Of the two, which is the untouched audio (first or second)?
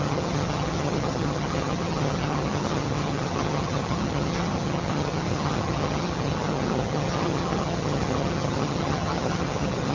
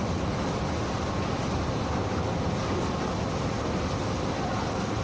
second